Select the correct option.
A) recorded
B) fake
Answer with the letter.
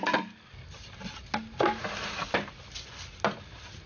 A